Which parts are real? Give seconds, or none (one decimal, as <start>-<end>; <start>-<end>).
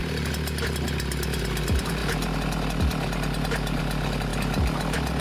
0.0-5.2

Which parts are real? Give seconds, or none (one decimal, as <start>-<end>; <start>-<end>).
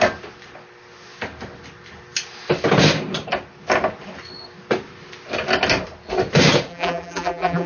0.0-6.7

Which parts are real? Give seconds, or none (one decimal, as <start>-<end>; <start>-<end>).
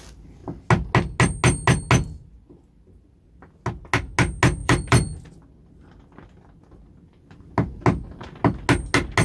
0.0-4.6; 5.2-9.2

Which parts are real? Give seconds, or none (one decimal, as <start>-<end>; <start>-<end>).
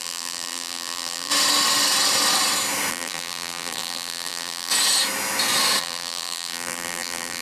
1.3-2.9; 4.7-5.8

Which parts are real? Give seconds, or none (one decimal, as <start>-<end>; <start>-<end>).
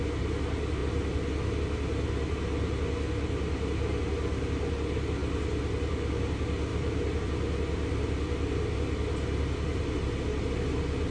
0.0-6.7; 7.3-11.1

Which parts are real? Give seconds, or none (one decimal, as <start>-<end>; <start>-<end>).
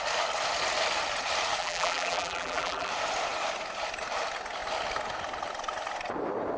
0.0-1.6; 2.9-6.6